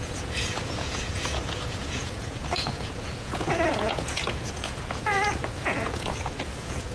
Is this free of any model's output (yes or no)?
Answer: no